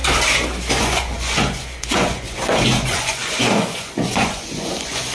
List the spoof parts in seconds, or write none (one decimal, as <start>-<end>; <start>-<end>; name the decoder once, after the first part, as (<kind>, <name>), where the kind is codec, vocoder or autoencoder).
0.8-5.1 (vocoder, Vocos)